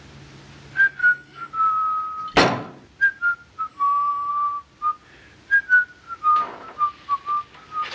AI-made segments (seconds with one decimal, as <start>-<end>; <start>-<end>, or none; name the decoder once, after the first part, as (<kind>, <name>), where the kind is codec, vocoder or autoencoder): 1.0-1.5 (codec, DAC); 3.7-4.3